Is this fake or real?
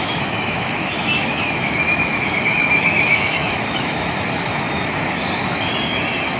fake